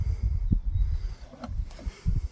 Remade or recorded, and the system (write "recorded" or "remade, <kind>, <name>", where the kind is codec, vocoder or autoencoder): remade, vocoder, BigVGAN v2